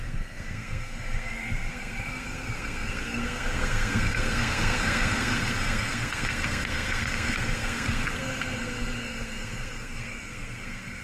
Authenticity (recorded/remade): remade